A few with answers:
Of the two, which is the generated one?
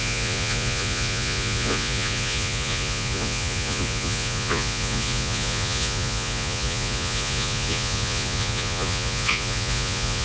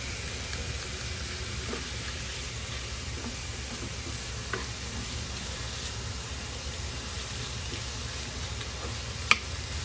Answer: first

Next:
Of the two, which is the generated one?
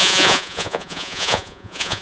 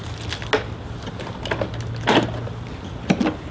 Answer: first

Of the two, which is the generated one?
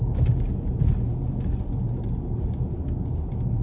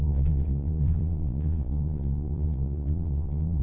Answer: second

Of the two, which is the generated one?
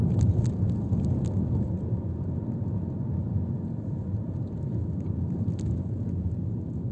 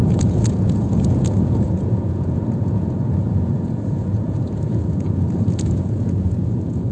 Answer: second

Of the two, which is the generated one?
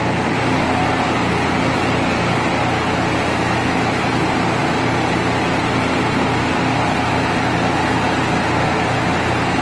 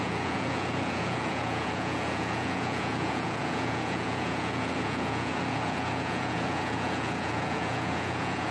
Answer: second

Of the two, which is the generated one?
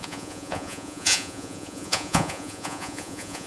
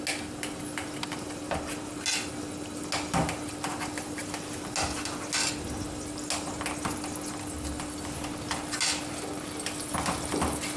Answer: first